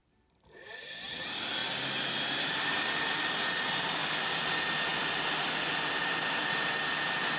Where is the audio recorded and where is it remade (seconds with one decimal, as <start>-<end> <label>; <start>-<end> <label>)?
0.0-1.1 remade; 1.1-4.0 recorded; 4.0-4.5 remade; 4.5-4.9 recorded; 4.9-6.4 remade; 6.4-7.4 recorded